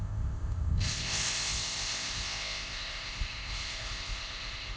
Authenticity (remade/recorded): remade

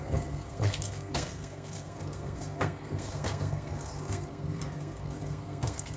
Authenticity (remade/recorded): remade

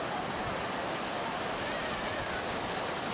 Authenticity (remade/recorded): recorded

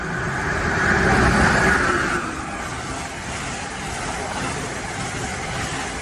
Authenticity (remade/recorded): recorded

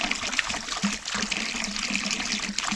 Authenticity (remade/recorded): recorded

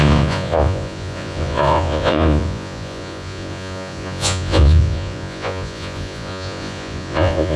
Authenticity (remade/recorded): remade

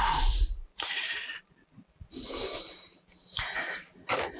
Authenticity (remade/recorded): recorded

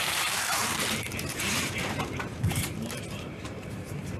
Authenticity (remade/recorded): remade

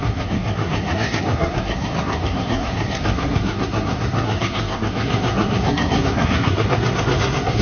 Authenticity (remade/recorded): remade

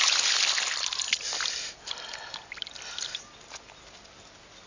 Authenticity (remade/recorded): recorded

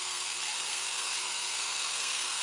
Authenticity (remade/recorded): remade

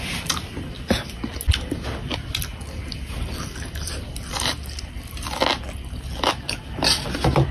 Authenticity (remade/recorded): recorded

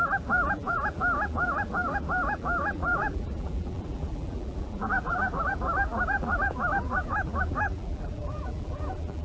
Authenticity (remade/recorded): remade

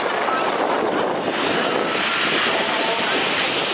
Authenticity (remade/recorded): recorded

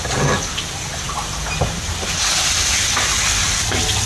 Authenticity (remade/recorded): recorded